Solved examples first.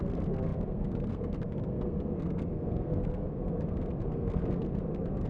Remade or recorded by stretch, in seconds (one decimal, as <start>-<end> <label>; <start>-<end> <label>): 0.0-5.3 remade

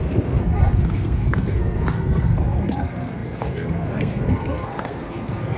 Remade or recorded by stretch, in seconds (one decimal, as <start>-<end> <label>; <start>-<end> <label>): 0.0-5.6 remade

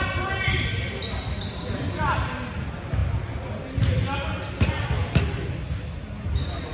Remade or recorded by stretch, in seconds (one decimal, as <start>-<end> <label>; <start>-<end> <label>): 0.0-6.7 recorded

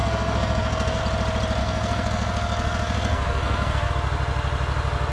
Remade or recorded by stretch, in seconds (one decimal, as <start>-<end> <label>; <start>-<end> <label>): 0.0-1.0 remade; 1.0-1.6 recorded; 1.6-3.9 remade; 3.9-5.1 recorded

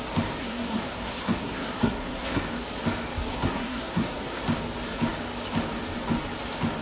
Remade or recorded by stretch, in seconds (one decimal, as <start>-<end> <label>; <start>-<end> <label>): 0.0-0.4 recorded; 0.4-2.4 remade; 2.4-3.3 recorded; 3.3-4.4 remade; 4.4-6.8 recorded